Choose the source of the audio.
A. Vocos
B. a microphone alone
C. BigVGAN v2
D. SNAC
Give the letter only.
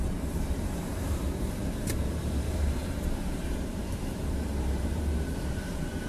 C